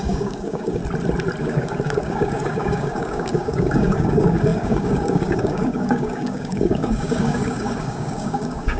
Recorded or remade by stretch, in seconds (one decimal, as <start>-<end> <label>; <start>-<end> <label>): 0.0-0.8 remade; 0.8-1.4 recorded; 1.4-8.8 remade